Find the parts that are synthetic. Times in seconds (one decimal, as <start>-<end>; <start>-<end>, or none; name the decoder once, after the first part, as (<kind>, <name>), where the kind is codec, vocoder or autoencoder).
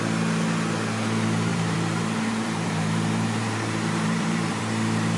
1.5-4.6 (vocoder, BigVGAN v2)